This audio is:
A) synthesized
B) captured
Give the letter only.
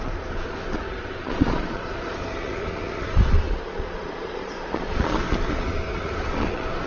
A